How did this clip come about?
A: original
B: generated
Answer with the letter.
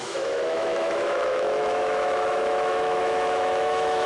B